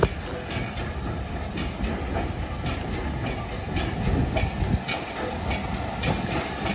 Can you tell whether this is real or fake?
real